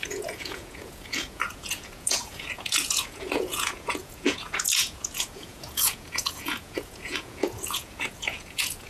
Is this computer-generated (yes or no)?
yes